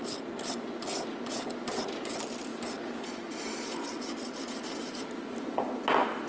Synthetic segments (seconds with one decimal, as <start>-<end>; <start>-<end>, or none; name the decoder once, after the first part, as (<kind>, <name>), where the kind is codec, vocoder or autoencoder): none